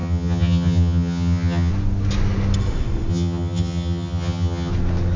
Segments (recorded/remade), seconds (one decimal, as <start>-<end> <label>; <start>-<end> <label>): 0.0-1.7 remade; 1.7-3.1 recorded; 3.1-4.7 remade; 4.7-5.2 recorded